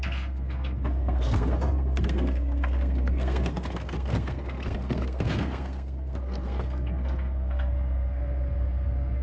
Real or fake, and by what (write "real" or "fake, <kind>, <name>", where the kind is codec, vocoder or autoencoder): fake, codec, SNAC